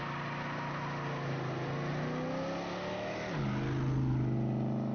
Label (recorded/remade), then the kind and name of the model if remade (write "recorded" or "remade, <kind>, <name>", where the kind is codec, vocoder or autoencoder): recorded